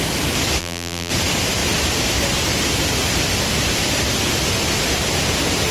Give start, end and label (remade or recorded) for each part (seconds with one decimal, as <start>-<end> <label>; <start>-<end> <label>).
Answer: 0.0-0.6 recorded; 0.6-1.1 remade; 1.1-5.7 recorded